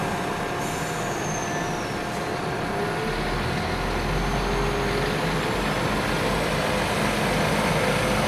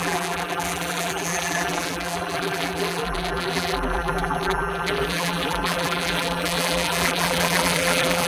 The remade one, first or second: second